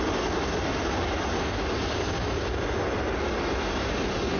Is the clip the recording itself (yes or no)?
yes